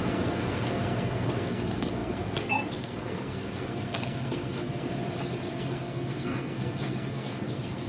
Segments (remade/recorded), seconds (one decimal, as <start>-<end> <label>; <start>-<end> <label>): 0.0-4.9 remade; 4.9-5.5 recorded; 5.5-7.9 remade